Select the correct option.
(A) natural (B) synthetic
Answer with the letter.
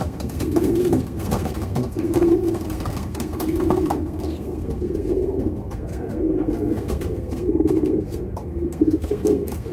B